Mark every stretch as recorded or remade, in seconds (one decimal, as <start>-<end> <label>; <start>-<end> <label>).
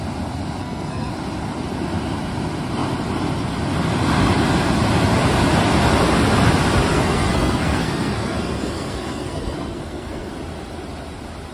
0.0-0.6 recorded; 0.6-1.1 remade; 1.1-6.9 recorded; 6.9-10.3 remade; 10.3-11.5 recorded